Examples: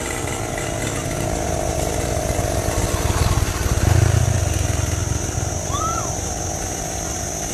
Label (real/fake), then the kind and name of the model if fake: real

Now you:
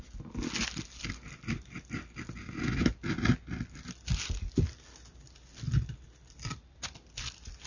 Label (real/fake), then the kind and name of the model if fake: real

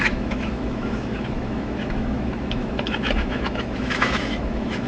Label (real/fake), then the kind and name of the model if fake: fake, autoencoder, DAC-VAE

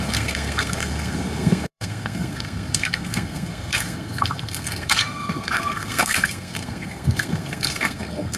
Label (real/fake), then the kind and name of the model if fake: fake, codec, SNAC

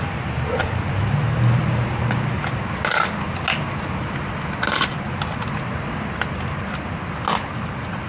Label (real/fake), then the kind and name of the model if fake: real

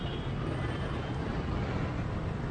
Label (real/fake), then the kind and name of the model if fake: real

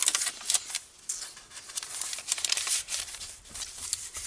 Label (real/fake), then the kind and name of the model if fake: fake, vocoder, BigVGAN v2